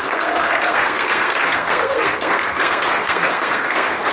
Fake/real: fake